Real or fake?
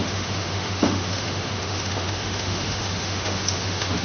fake